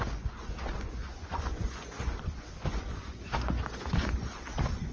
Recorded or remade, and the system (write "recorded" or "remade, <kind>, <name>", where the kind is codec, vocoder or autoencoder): remade, vocoder, Vocos